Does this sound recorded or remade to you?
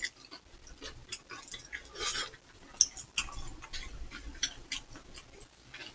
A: recorded